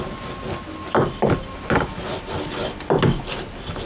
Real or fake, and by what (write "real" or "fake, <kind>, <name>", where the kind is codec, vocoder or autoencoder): real